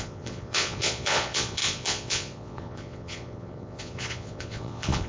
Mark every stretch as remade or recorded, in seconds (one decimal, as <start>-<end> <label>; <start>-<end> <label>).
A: 0.0-5.1 remade